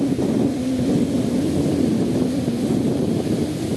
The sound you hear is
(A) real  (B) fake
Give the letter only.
A